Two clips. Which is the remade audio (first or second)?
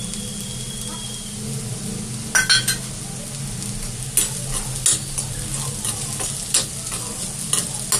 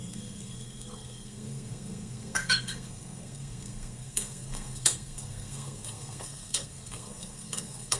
second